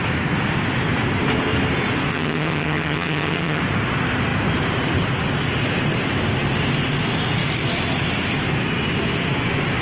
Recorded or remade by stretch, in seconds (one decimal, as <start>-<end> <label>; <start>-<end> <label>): 0.0-2.1 recorded; 2.1-3.6 remade; 3.6-9.8 recorded